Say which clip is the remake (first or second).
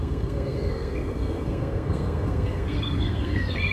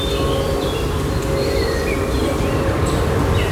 first